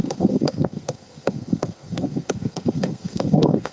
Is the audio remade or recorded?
remade